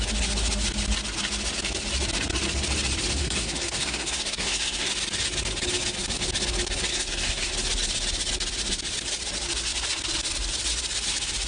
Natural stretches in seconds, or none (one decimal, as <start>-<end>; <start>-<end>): 0.0-3.2; 4.9-6.9; 7.5-11.5